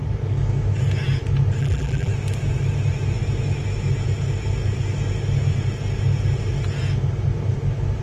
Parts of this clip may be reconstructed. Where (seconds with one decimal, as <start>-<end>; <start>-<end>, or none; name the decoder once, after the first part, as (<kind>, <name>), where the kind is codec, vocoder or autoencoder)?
1.6-2.1 (vocoder, BigVGAN v2)